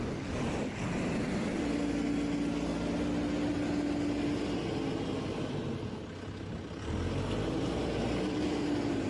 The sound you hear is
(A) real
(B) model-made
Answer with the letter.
A